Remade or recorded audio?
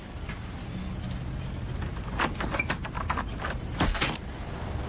recorded